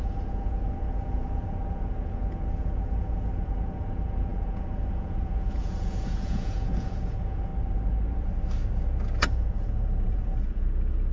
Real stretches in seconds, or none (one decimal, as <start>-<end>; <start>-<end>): 7.5-9.2